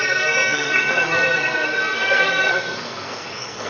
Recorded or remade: remade